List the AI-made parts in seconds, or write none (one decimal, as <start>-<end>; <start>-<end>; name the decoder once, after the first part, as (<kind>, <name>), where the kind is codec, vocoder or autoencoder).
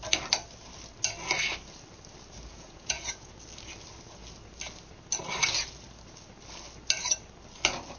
2.5-3.3 (vocoder, Vocos)